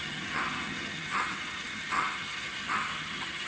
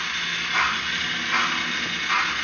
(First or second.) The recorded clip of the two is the second